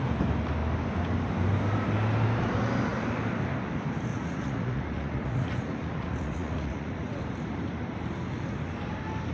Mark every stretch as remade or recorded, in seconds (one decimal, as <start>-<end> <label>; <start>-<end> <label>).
0.0-4.1 recorded; 4.1-7.2 remade; 7.2-9.3 recorded